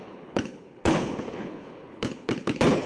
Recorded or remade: remade